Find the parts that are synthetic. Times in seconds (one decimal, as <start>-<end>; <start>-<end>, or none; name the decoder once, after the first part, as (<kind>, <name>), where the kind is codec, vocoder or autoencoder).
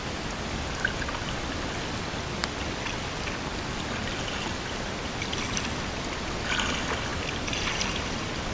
none